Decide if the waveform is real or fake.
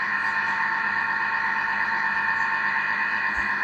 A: fake